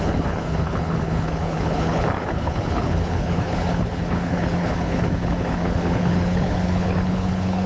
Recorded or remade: remade